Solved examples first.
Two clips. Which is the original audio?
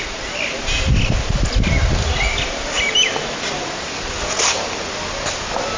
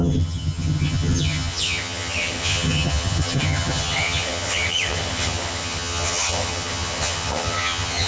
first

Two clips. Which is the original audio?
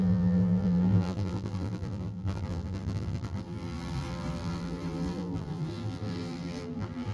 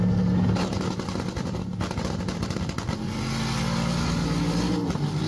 second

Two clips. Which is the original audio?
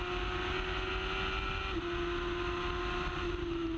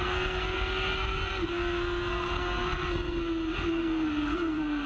first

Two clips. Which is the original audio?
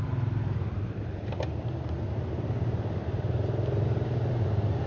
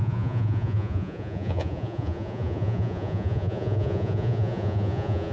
first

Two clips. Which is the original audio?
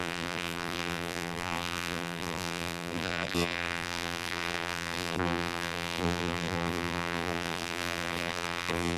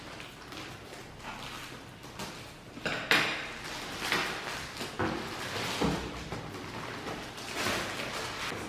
second